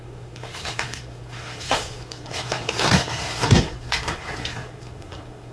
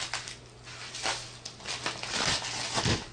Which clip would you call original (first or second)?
second